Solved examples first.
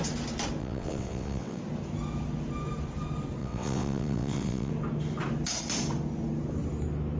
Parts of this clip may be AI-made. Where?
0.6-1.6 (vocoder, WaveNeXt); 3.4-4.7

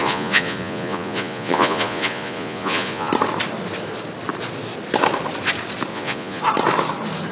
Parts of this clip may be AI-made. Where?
0.0-3.1 (vocoder, Vocos); 5.9-6.4